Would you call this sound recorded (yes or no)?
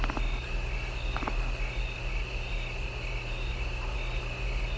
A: yes